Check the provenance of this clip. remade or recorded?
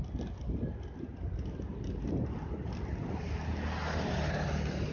recorded